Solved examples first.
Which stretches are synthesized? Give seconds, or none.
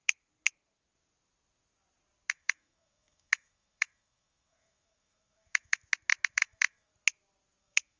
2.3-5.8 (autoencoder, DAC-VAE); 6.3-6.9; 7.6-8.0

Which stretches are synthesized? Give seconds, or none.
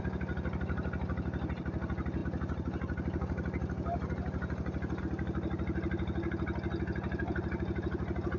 none